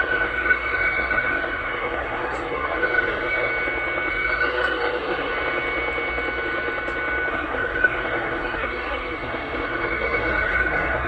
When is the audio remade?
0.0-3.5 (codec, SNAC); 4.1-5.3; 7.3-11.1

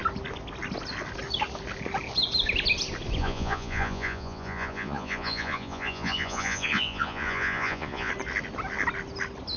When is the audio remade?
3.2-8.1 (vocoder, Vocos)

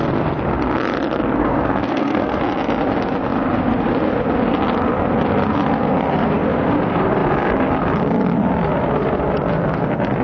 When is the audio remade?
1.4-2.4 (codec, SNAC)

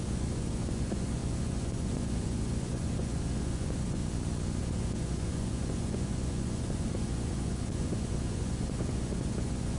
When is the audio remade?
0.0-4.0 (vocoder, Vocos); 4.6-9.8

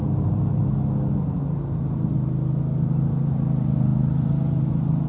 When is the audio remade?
0.0-0.6 (vocoder, BigVGAN v2); 2.6-5.1